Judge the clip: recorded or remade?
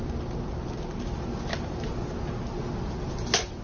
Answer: recorded